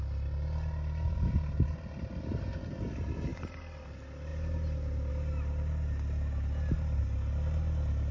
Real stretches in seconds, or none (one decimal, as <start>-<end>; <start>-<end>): 0.0-8.1